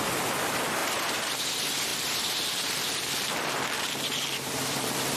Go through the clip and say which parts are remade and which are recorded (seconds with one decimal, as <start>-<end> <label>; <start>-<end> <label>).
0.0-1.9 recorded; 1.9-5.2 remade